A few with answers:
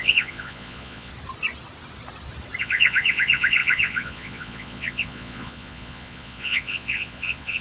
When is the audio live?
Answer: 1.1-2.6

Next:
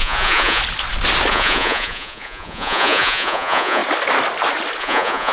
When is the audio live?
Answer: 0.6-1.3; 3.8-4.8

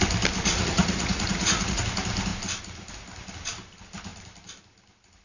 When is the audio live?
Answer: 0.0-0.5; 1.8-5.2